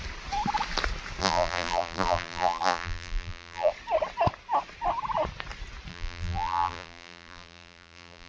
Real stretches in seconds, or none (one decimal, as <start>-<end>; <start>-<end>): 0.0-1.2; 3.7-5.9